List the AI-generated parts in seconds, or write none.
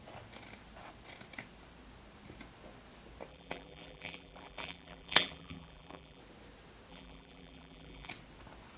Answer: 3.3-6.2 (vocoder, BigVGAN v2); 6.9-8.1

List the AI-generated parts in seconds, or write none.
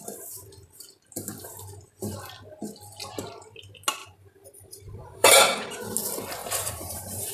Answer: 4.0-5.4 (vocoder, BigVGAN v2); 6.4-7.3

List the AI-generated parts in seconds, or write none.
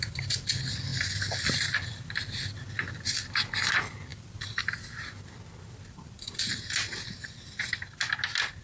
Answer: 4.1-4.6 (vocoder, BigVGAN v2)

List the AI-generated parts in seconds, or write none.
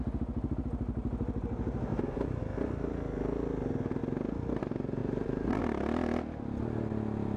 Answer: 1.9-2.4 (vocoder, BigVGAN v2); 5.0-5.6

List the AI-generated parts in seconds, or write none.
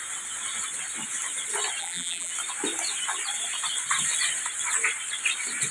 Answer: 1.8-2.3 (vocoder, BigVGAN v2)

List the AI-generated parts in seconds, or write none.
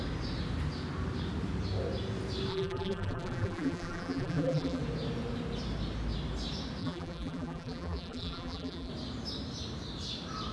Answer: 2.5-4.8 (vocoder, BigVGAN v2); 6.8-8.9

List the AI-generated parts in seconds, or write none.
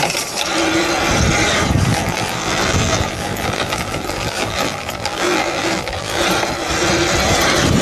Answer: 1.9-6.2 (vocoder, BigVGAN v2)